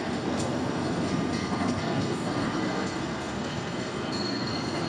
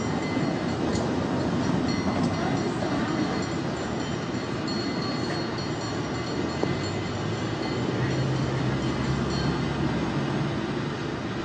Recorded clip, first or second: second